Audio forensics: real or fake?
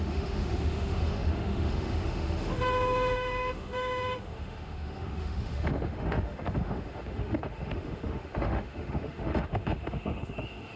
fake